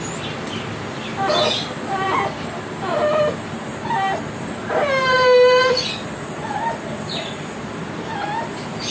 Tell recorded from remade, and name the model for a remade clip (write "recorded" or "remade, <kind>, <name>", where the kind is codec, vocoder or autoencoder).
recorded